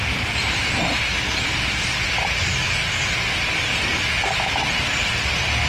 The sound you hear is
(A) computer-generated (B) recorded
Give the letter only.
B